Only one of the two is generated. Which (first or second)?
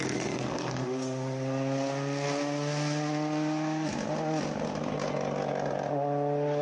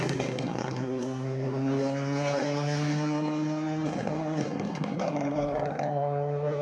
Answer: second